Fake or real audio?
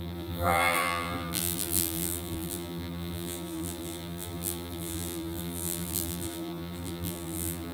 fake